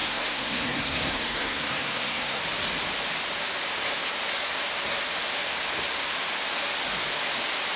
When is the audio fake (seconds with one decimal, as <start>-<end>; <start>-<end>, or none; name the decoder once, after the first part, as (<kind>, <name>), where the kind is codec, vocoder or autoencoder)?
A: 0.0-2.4 (codec, SNAC)